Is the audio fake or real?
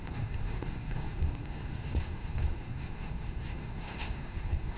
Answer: fake